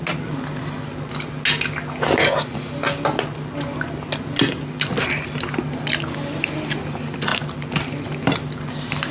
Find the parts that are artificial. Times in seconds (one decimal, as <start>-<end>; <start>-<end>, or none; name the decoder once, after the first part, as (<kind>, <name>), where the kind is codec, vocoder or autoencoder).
none